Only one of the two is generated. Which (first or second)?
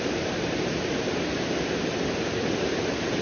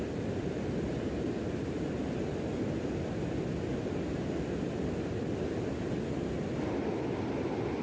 first